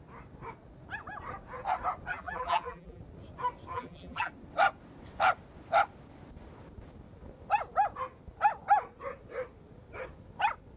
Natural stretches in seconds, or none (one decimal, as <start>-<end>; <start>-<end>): 0.0-2.1; 3.0-3.7; 4.3-10.8